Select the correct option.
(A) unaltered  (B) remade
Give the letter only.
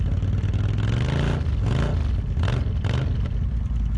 A